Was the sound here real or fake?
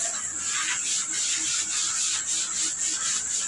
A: real